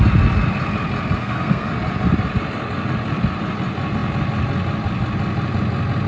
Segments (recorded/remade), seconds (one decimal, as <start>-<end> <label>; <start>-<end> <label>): 0.0-1.2 recorded; 1.2-1.7 remade; 1.7-6.1 recorded